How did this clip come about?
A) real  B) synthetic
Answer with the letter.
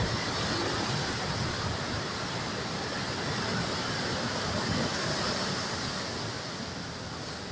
A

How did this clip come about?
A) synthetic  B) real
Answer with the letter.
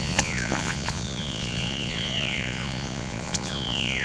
A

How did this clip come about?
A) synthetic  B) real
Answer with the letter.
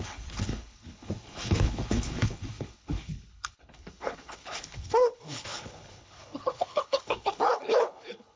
A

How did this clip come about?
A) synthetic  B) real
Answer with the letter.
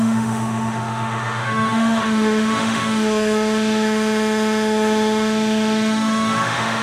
A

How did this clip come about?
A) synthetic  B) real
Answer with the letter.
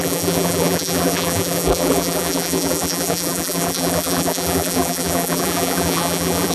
A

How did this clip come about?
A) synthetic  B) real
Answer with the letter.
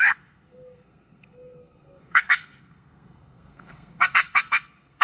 A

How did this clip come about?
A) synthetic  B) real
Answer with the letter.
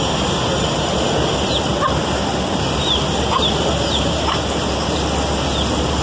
B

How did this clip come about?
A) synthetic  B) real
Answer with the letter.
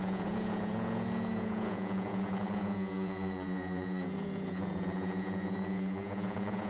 A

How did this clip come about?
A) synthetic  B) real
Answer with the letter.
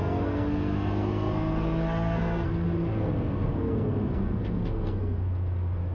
A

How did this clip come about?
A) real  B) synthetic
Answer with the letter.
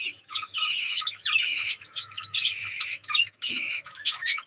B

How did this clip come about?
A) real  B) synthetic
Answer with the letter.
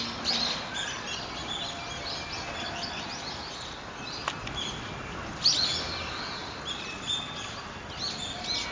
A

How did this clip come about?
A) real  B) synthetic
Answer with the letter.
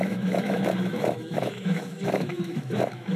B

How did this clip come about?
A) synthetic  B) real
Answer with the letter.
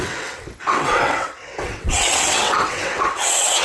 A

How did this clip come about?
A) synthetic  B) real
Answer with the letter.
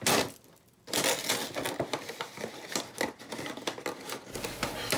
B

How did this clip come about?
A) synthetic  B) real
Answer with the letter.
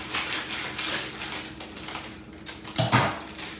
B